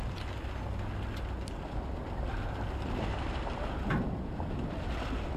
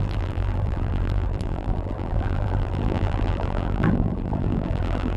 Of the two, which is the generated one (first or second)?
second